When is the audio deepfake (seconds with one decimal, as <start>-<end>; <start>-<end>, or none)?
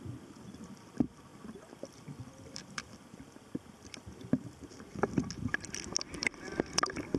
none